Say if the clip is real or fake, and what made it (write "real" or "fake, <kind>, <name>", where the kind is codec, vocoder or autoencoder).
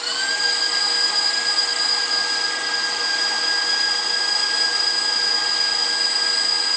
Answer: real